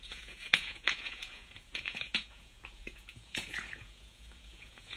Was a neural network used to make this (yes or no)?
yes